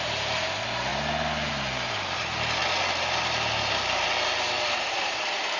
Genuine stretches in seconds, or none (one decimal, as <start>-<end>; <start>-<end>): 0.9-1.5; 2.6-4.8